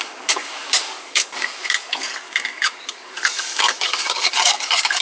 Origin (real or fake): fake